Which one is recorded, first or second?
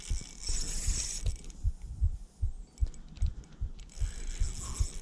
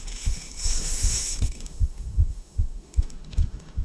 first